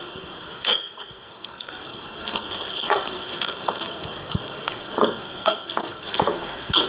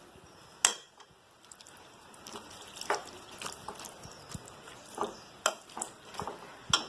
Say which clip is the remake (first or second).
first